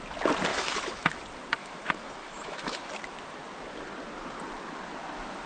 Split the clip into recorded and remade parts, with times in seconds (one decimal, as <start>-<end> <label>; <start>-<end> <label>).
0.0-0.5 recorded; 0.5-1.2 remade; 1.2-1.6 recorded; 1.6-2.9 remade; 2.9-5.5 recorded